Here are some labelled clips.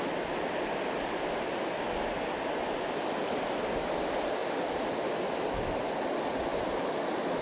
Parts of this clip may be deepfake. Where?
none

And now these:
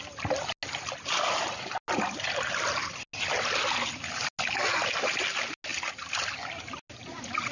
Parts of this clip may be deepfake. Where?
none

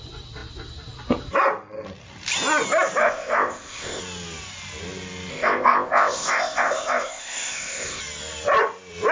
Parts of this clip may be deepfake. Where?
3.0-4.0; 5.3-8.0

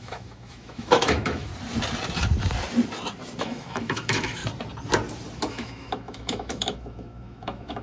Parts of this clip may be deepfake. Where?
0.0-1.5; 3.4-4.4; 5.5-7.8

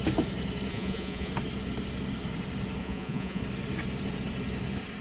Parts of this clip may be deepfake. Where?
0.7-1.3; 2.8-3.4

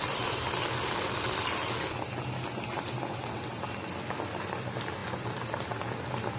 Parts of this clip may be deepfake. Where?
3.1-3.6

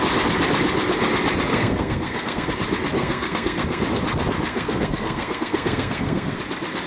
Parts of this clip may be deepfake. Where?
1.5-2.5; 2.9-3.8; 4.5-6.4

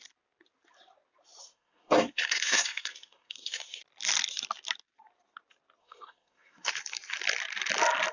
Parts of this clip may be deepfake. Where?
1.4-3.8; 5.8-6.7